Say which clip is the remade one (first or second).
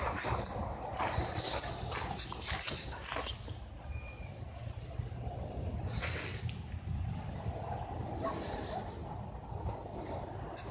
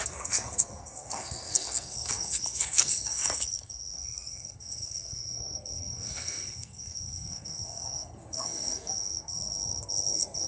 second